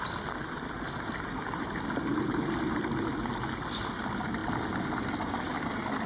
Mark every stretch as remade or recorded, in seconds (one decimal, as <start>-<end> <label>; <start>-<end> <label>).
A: 0.0-6.1 recorded